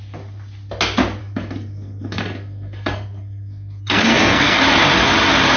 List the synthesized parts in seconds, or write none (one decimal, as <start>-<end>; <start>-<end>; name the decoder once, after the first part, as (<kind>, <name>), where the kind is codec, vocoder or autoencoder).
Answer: 1.2-4.6 (codec, SNAC)